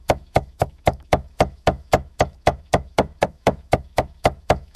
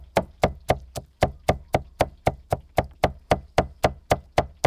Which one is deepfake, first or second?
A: first